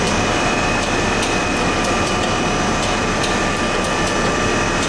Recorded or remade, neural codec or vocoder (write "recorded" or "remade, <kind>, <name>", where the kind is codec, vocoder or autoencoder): remade, vocoder, BigVGAN v2